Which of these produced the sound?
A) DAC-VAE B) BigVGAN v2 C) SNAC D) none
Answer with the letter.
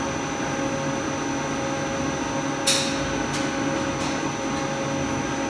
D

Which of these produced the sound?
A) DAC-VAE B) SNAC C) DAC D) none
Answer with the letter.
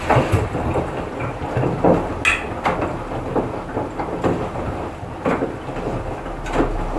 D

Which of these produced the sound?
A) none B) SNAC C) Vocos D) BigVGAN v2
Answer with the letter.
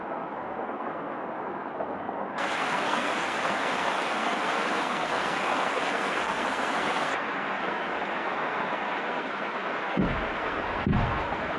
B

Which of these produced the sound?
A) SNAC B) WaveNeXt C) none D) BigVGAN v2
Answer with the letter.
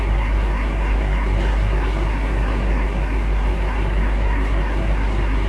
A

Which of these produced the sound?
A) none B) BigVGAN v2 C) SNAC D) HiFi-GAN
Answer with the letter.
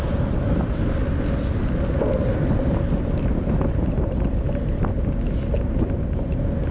A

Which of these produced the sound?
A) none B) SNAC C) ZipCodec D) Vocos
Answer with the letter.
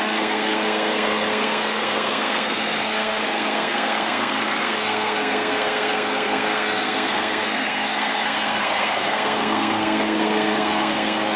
B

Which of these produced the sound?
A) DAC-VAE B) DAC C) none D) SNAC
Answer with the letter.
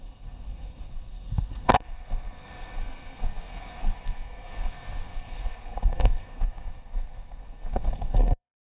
D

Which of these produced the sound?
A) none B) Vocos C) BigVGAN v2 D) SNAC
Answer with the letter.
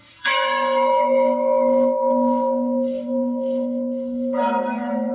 D